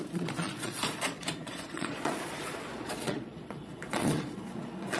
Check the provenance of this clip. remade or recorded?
remade